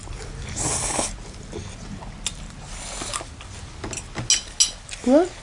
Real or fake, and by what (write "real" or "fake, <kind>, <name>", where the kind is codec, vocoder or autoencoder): real